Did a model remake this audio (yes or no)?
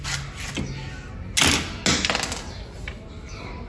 no